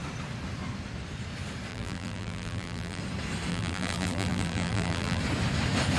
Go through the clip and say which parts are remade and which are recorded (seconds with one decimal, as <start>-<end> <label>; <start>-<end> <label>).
0.0-1.7 recorded; 1.7-3.0 remade; 3.0-3.5 recorded; 3.5-5.2 remade; 5.2-6.0 recorded